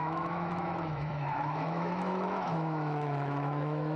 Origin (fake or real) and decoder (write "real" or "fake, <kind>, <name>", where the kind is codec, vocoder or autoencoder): fake, autoencoder, DAC-VAE